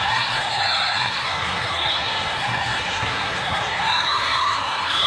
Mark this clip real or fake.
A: fake